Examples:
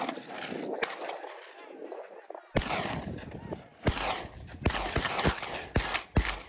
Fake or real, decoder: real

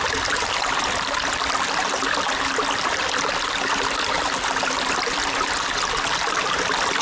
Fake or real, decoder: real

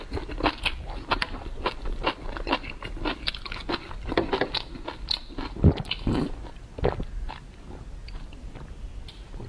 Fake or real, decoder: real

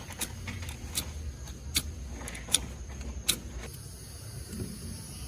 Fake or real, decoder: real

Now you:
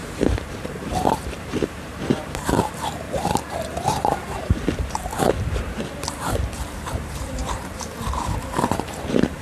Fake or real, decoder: fake, vocoder, BigVGAN v2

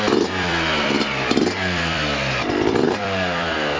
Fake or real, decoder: fake, vocoder, BigVGAN v2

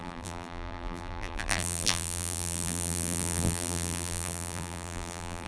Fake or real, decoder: fake, vocoder, BigVGAN v2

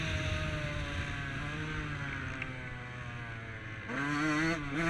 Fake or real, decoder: real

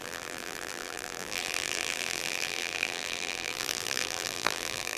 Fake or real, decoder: fake, vocoder, BigVGAN v2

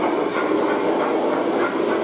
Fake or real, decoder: fake, vocoder, BigVGAN v2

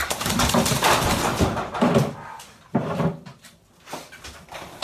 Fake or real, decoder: fake, vocoder, BigVGAN v2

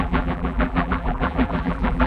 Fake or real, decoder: fake, vocoder, BigVGAN v2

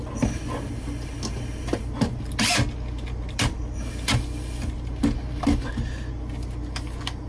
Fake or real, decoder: real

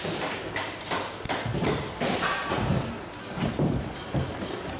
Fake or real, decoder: fake, vocoder, BigVGAN v2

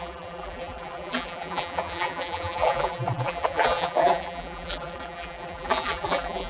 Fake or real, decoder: fake, vocoder, BigVGAN v2